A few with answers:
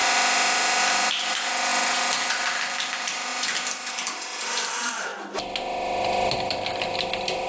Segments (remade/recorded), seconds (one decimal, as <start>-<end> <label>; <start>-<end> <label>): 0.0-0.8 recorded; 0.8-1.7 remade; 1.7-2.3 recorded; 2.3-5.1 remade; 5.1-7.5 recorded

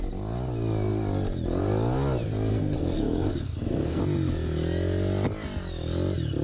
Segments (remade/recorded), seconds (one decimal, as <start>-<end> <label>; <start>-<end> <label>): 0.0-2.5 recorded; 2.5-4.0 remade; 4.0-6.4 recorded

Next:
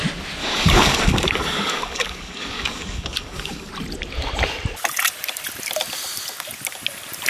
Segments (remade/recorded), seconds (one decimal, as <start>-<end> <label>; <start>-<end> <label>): 0.0-0.4 recorded; 0.4-3.7 remade; 3.7-7.3 recorded

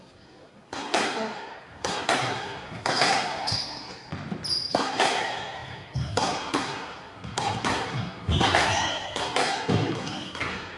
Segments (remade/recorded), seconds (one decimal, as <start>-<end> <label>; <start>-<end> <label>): 0.0-4.1 remade; 4.1-4.7 recorded; 4.7-10.8 remade